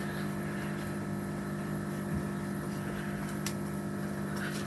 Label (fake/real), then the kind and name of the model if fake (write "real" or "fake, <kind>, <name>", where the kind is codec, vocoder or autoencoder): real